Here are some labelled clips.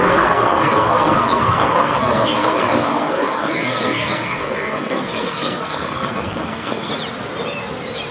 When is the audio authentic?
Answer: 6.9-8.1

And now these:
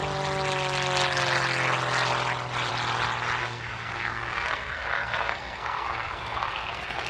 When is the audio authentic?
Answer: 0.0-3.4